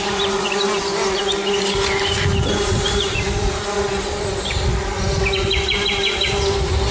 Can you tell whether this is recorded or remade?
recorded